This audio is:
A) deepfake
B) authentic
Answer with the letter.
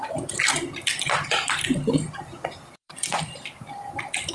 A